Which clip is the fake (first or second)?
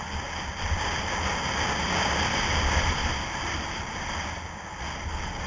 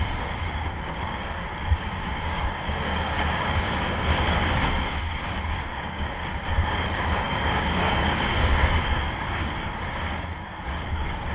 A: second